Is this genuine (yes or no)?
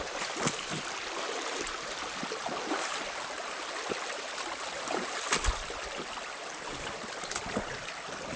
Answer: yes